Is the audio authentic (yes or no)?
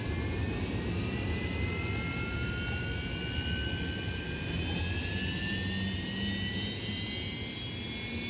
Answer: yes